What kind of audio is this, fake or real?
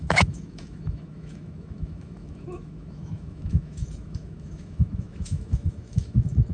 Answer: fake